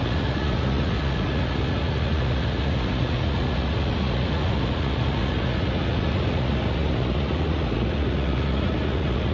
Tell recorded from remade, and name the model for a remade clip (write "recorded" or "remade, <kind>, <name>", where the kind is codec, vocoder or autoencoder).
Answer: remade, vocoder, Vocos